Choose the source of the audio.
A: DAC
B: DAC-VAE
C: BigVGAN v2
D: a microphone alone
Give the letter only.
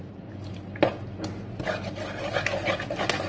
D